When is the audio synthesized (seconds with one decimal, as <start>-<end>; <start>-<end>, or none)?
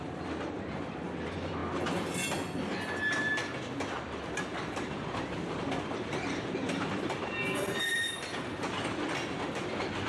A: 0.0-1.6; 4.6-10.1